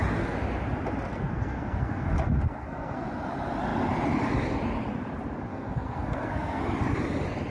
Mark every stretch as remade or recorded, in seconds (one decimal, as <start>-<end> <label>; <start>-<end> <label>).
0.0-1.1 recorded; 1.1-3.1 remade; 3.1-5.5 recorded; 5.5-6.6 remade; 6.6-7.5 recorded